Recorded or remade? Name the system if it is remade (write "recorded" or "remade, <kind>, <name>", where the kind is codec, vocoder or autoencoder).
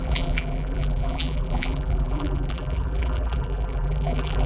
remade, vocoder, BigVGAN v2